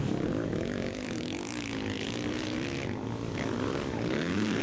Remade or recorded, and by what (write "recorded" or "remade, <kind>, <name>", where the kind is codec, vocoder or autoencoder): remade, codec, DAC